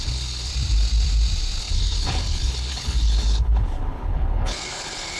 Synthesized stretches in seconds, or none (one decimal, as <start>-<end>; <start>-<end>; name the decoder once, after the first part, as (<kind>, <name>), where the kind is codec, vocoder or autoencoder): 0.0-0.5 (codec, HILCodec); 1.6-5.2

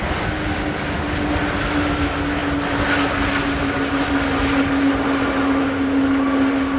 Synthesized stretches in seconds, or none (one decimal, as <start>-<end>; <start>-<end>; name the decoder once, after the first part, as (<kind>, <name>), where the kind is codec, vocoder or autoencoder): none

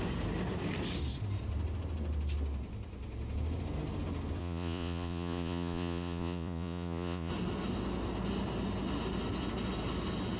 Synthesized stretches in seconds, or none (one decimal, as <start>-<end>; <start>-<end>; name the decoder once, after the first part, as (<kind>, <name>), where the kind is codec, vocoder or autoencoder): 4.4-7.3 (vocoder, Vocos)

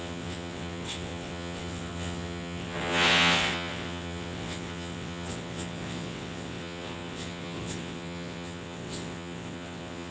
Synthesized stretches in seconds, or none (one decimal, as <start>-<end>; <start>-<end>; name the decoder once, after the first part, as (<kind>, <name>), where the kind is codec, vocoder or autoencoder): 0.0-10.1 (vocoder, WaveNeXt)

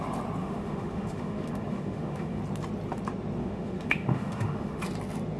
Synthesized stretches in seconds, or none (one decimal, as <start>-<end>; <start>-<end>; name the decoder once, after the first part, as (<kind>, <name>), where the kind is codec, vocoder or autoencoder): 0.4-2.4 (autoencoder, DAC-VAE); 3.4-4.8

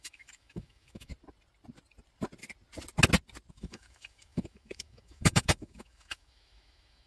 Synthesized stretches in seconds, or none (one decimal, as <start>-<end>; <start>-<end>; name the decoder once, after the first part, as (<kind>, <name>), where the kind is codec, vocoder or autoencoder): 0.0-1.1 (autoencoder, DAC-VAE); 3.5-7.1

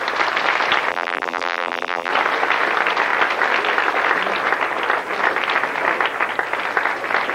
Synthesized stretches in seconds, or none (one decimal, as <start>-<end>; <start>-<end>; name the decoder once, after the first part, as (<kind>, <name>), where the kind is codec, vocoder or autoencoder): 0.9-2.1 (vocoder, BigVGAN v2)

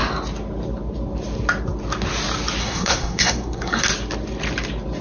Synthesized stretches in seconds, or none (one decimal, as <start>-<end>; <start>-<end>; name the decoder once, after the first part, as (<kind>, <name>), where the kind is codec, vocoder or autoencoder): 2.6-3.8 (codec, SNAC)